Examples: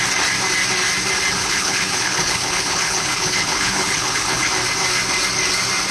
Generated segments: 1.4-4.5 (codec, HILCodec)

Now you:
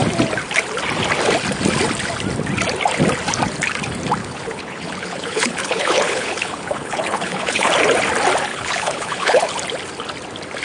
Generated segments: 4.2-7.7 (codec, HILCodec); 8.5-9.5

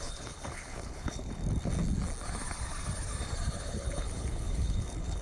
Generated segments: 0.0-1.4 (codec, HILCodec); 3.6-5.2

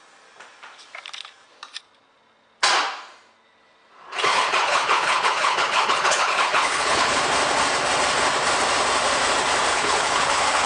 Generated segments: 4.3-7.2 (codec, HILCodec); 9.7-10.7